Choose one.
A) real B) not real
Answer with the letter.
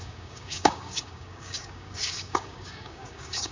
B